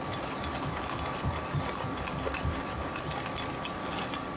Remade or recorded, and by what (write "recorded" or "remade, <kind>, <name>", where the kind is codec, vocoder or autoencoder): recorded